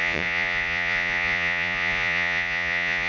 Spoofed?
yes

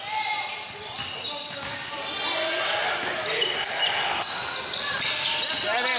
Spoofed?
no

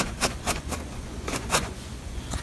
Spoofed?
yes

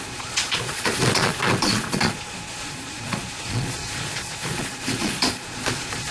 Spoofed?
yes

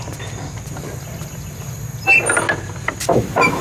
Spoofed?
no